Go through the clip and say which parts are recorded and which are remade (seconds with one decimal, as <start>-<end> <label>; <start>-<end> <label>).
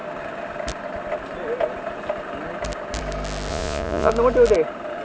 0.0-3.5 recorded; 3.5-4.1 remade; 4.1-5.0 recorded